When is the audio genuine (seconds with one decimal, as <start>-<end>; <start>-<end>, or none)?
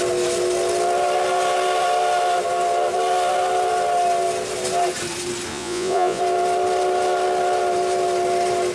0.0-5.5; 6.2-8.7